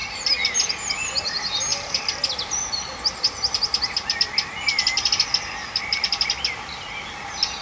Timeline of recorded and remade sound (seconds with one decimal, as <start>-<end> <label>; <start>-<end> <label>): 0.0-1.7 recorded; 1.7-2.3 remade; 2.3-7.6 recorded